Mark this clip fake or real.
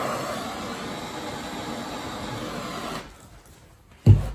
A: real